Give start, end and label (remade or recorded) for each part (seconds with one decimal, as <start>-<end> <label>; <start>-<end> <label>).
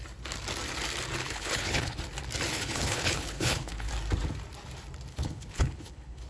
0.0-1.2 recorded; 1.2-2.0 remade; 2.0-2.5 recorded; 2.5-3.9 remade; 3.9-5.1 recorded; 5.1-6.3 remade